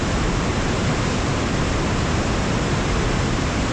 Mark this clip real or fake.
real